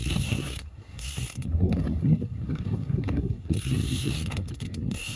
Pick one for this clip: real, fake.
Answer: fake